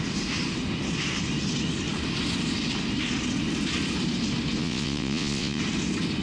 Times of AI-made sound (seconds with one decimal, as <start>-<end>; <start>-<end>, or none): 4.6-5.6